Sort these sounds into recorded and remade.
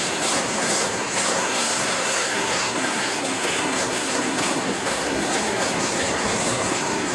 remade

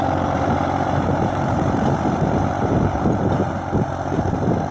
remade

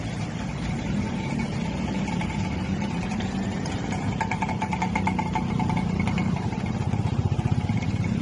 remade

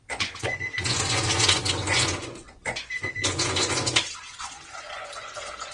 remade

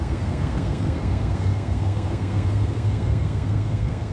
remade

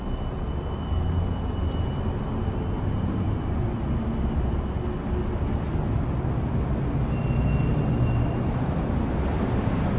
recorded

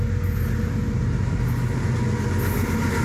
recorded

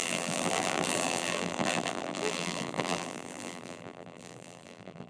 remade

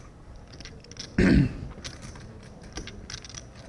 recorded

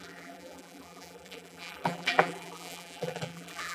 remade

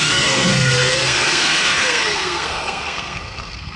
remade